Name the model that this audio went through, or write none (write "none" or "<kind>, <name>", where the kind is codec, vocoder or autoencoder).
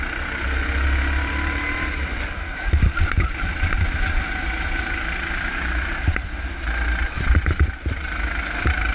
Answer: none